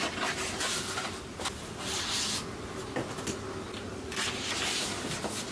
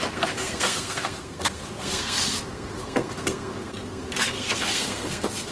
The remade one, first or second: second